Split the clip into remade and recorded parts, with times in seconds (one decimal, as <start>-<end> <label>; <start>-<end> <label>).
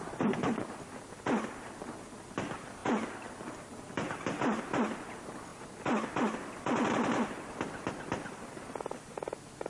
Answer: 0.0-9.7 recorded